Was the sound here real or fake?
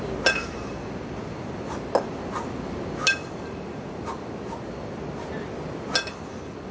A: real